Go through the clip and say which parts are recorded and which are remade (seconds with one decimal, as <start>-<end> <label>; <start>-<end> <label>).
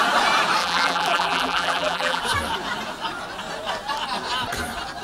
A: 0.0-0.6 recorded; 0.6-2.2 remade; 2.2-5.0 recorded